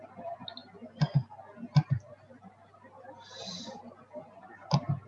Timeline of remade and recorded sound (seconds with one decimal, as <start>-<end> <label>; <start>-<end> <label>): 0.0-5.1 recorded